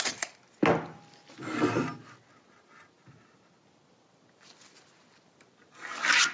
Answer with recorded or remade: recorded